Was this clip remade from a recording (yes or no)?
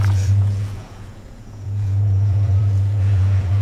yes